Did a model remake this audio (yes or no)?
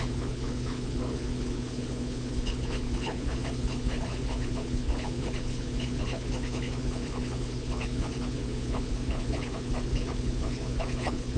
yes